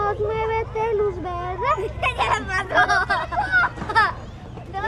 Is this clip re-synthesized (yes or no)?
no